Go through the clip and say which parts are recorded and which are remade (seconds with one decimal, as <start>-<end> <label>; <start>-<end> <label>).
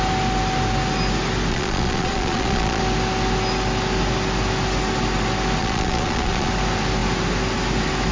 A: 0.0-1.5 recorded; 1.5-2.8 remade; 2.8-5.6 recorded; 5.6-6.5 remade; 6.5-8.1 recorded